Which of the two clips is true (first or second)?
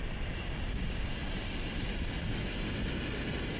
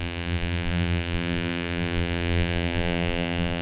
first